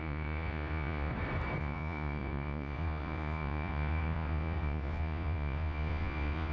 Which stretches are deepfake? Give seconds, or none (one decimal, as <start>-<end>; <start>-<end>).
0.0-1.1; 1.6-6.5